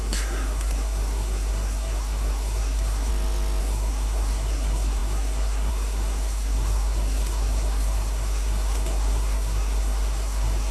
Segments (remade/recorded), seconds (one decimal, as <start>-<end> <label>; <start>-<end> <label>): 0.0-3.1 remade; 3.1-3.6 recorded; 3.6-10.7 remade